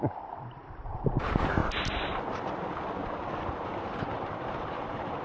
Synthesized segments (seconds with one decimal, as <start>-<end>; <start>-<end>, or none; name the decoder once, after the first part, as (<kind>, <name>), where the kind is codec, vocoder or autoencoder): 0.0-1.6 (vocoder, BigVGAN v2); 3.4-5.2

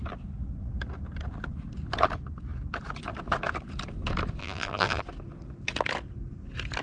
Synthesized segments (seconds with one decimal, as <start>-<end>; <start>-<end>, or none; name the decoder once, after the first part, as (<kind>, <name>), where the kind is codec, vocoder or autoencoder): 4.4-5.0 (vocoder, BigVGAN v2)

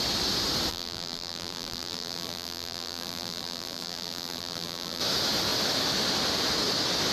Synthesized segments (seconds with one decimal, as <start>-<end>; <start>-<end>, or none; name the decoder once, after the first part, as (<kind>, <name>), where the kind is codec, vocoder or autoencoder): 0.7-5.0 (vocoder, BigVGAN v2)